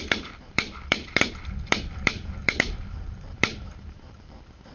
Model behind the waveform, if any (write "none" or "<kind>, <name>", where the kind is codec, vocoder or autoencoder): vocoder, BigVGAN v2